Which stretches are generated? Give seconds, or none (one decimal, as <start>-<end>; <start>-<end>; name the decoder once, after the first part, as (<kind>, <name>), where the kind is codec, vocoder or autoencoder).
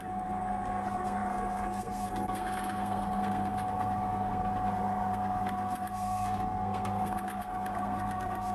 0.0-8.5 (codec, SNAC)